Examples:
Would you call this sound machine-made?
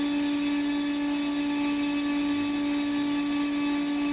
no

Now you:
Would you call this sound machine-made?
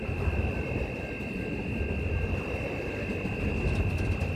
no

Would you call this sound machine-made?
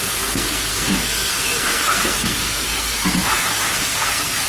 yes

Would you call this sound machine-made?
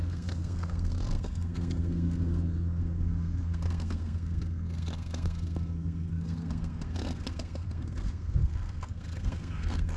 yes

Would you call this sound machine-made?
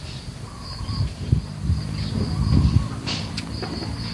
no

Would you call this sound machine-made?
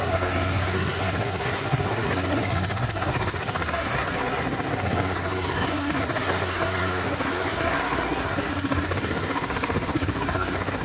yes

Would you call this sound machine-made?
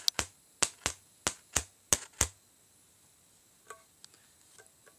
no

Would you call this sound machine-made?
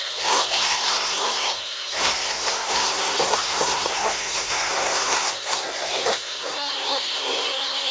yes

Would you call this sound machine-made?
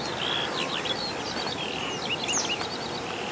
no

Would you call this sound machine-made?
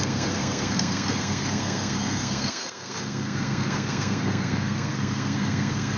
yes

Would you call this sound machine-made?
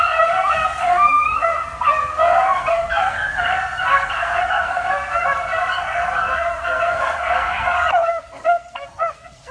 yes